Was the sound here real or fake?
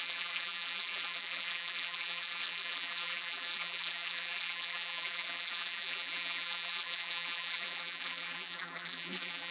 fake